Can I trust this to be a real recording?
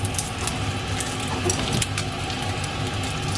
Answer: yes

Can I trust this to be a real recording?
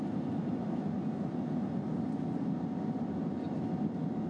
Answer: yes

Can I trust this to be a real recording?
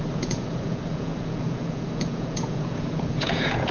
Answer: no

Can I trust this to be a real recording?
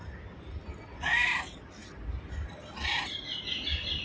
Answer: yes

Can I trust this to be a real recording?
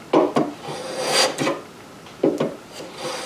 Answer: yes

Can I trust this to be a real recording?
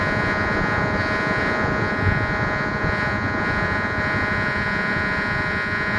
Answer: no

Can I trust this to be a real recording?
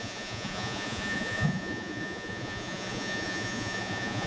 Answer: no